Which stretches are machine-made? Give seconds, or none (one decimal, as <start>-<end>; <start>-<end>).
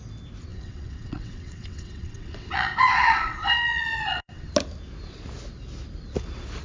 0.5-4.5